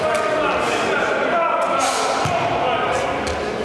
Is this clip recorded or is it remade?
recorded